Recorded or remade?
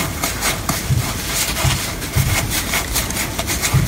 recorded